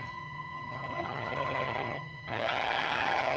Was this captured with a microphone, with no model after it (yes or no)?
no